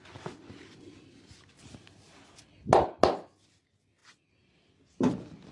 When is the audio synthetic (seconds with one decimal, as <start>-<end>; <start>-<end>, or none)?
none